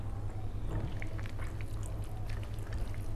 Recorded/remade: recorded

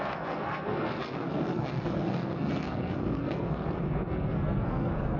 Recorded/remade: remade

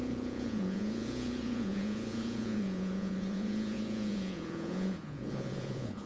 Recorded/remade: remade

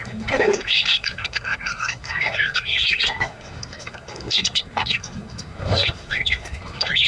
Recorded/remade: remade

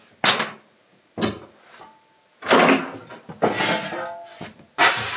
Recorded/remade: recorded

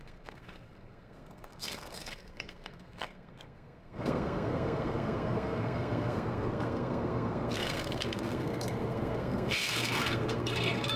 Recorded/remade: remade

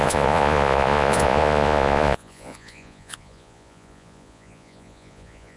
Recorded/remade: remade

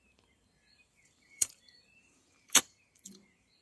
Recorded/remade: remade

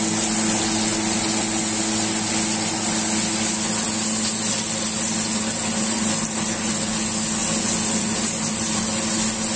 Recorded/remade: recorded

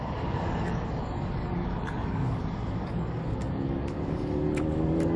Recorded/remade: remade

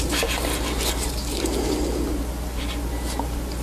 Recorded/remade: recorded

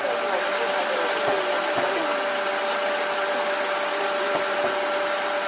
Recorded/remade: recorded